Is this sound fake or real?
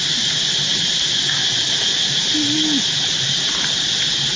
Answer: real